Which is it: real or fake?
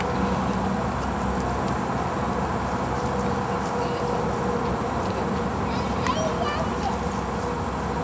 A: real